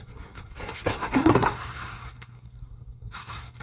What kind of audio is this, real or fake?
fake